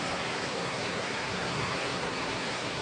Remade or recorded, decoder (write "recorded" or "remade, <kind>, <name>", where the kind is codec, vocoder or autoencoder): remade, codec, SNAC